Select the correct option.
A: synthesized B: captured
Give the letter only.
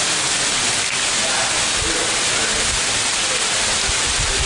B